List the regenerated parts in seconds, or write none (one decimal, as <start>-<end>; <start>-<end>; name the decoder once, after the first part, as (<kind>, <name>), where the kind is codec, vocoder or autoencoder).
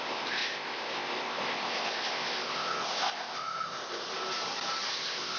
0.0-4.1 (codec, ZipCodec); 4.9-5.4